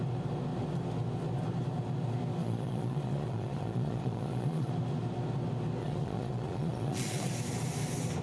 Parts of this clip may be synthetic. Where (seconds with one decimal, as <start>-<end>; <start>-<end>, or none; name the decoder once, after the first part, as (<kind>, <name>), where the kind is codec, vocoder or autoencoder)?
2.4-4.7 (vocoder, Vocos); 5.8-7.3

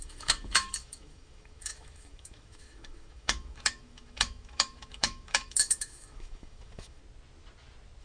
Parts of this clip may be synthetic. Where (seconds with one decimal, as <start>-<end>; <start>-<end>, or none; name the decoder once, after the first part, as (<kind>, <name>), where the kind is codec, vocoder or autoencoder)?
0.0-7.0 (autoencoder, DAC-VAE)

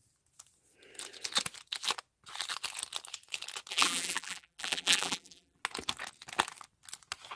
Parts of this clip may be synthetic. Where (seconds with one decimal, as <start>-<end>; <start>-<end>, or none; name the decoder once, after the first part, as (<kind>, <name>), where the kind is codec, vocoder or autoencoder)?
3.7-5.6 (vocoder, BigVGAN v2)

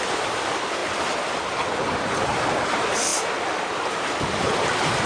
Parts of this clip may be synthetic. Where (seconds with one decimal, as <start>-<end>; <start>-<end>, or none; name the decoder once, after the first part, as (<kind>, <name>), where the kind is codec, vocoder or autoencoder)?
none

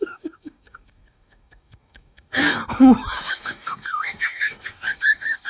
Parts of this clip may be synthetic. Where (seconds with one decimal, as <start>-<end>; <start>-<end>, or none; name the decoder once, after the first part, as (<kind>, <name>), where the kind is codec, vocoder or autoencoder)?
0.0-2.6 (codec, DAC); 3.3-5.5

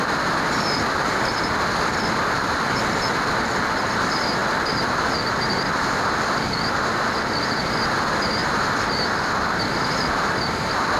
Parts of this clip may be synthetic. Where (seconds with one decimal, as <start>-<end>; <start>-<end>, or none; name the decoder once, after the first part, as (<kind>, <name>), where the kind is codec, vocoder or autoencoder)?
8.4-9.0 (vocoder, BigVGAN v2)